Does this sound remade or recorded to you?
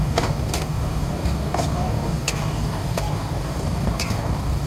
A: remade